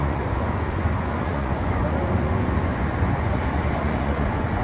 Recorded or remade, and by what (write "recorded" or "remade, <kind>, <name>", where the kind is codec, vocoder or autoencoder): remade, vocoder, Vocos